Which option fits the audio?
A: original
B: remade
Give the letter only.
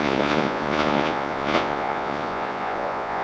B